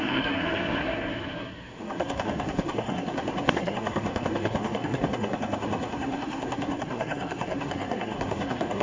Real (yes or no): no